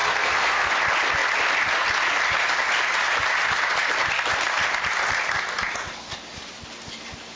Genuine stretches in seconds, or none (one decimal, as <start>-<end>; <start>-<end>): 0.7-7.4